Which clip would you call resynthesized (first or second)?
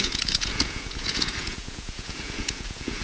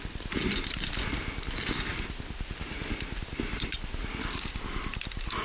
first